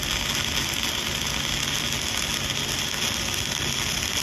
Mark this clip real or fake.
real